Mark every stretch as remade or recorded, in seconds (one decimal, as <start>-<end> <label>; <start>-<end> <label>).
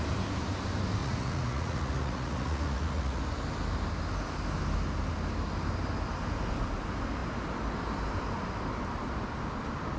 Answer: 0.0-1.0 recorded; 1.0-3.2 remade; 3.2-10.0 recorded